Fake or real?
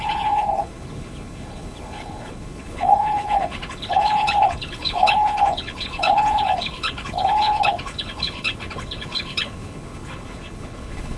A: fake